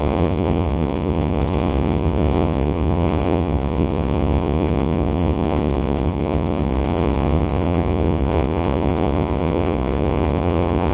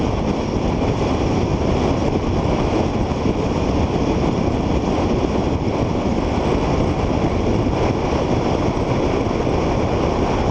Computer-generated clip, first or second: first